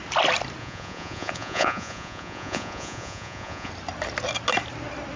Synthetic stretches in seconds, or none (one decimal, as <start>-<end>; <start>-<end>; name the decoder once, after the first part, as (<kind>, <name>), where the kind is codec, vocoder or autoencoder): 0.6-3.7 (vocoder, Vocos)